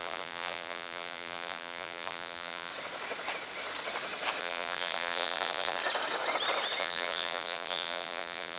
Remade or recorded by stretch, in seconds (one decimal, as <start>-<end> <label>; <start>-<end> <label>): 0.0-2.7 remade; 2.7-4.4 recorded; 4.4-5.8 remade; 5.8-6.8 recorded; 6.8-8.6 remade